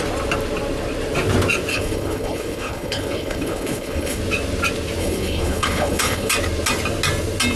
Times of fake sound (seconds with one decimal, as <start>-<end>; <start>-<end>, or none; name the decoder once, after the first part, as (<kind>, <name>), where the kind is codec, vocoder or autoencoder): 1.7-4.2 (codec, HILCodec); 5.0-6.3